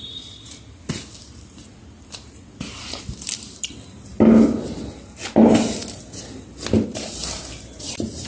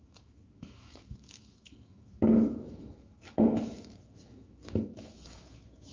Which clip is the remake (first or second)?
second